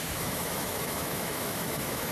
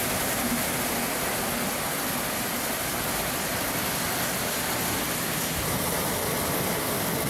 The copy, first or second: first